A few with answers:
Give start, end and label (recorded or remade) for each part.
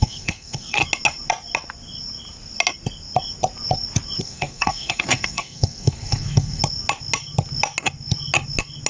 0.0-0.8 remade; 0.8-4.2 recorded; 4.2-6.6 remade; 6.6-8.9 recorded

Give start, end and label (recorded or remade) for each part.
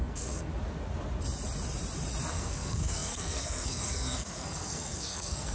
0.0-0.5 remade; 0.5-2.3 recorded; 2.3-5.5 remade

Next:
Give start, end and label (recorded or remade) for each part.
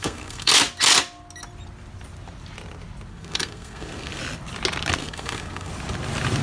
0.0-0.5 remade; 0.5-3.1 recorded; 3.1-4.2 remade; 4.2-5.0 recorded; 5.0-5.7 remade; 5.7-6.4 recorded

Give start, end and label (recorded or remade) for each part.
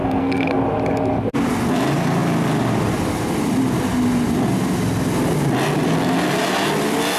0.0-0.6 remade; 0.6-7.2 recorded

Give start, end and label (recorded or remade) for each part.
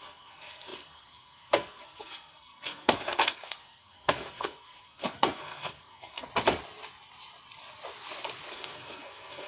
0.0-6.3 remade; 6.3-8.5 recorded; 8.5-9.5 remade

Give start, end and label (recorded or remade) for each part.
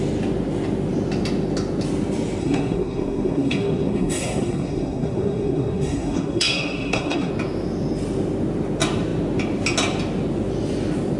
0.0-2.4 recorded; 2.4-7.3 remade; 7.3-11.2 recorded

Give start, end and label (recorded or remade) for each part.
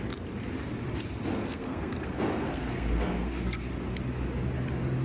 0.0-1.3 recorded; 1.3-3.7 remade; 3.7-5.0 recorded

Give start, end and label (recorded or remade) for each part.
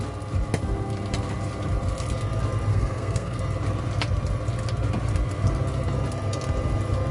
0.0-2.7 recorded; 2.7-3.4 remade; 3.4-7.1 recorded